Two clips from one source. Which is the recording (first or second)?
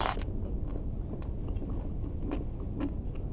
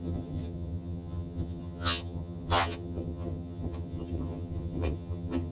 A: first